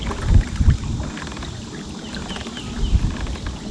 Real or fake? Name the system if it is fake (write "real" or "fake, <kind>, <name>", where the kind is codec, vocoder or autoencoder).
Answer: real